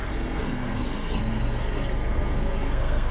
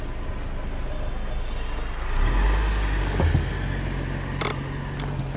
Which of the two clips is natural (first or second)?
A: second